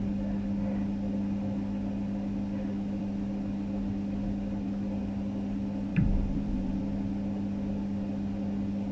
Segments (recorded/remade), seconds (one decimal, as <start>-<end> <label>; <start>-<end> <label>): 0.0-5.9 recorded; 5.9-6.8 remade; 6.8-8.9 recorded